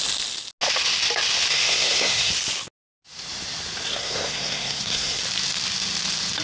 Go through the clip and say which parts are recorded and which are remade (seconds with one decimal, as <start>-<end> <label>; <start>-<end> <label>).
0.0-1.5 recorded; 1.5-2.3 remade; 2.3-3.9 recorded; 3.9-5.2 remade; 5.2-6.4 recorded